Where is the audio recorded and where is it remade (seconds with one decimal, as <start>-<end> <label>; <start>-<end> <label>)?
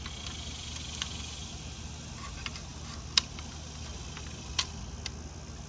0.0-5.7 recorded